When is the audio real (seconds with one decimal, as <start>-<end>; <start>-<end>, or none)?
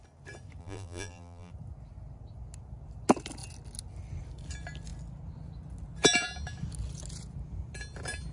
0.0-0.6; 1.5-8.3